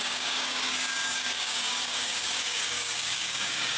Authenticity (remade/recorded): remade